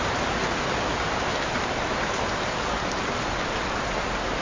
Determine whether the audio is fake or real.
real